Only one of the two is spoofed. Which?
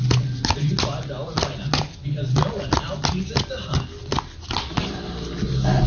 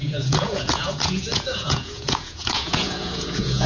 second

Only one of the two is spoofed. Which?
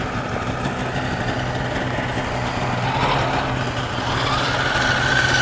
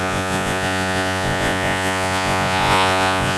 second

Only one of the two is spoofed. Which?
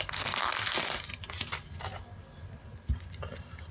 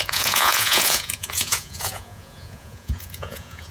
second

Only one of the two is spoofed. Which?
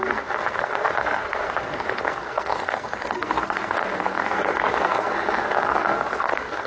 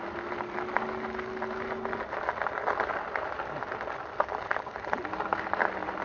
first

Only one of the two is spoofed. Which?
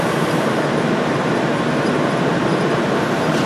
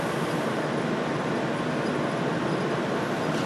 first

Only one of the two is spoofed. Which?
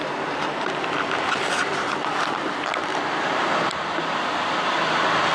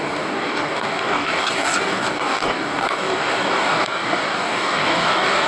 second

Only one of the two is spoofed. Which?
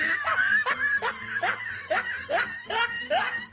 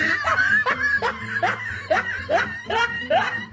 second